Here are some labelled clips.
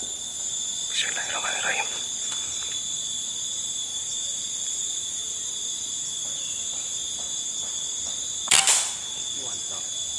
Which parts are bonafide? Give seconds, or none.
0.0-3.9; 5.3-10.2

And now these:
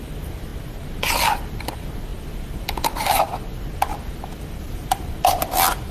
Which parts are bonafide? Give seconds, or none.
0.5-1.6; 2.1-4.6

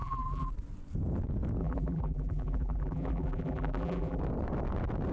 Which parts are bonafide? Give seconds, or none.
0.5-1.6; 4.2-5.1

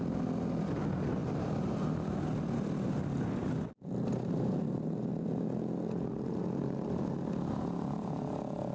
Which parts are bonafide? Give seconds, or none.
0.0-1.2; 4.3-8.7

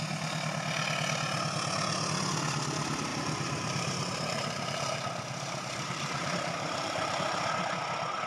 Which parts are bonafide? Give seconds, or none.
0.0-3.1; 7.5-8.3

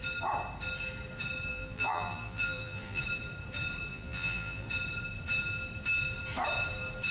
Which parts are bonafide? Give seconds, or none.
0.0-1.5; 3.0-3.9; 4.7-7.1

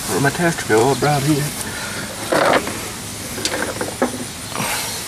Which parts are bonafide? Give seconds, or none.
0.0-5.1